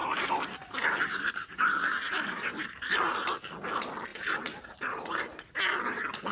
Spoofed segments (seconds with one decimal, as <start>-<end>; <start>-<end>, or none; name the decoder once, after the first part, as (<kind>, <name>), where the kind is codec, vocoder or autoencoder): 0.0-3.1 (vocoder, BigVGAN v2); 4.1-5.6